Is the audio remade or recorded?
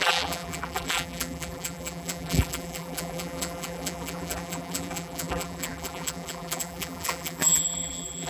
remade